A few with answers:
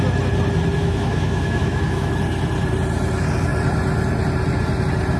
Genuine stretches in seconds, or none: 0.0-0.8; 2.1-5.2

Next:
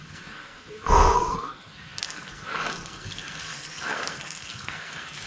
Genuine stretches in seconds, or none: none